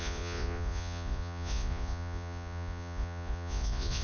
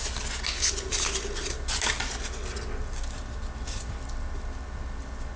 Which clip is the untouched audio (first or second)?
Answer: second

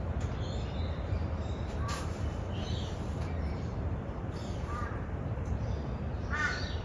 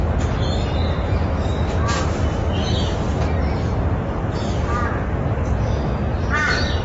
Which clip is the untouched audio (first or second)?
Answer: second